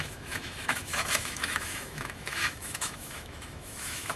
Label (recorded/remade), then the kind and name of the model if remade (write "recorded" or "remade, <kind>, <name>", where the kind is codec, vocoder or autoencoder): remade, autoencoder, DAC-VAE